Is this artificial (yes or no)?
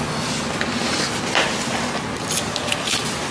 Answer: no